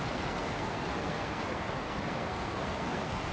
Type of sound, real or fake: fake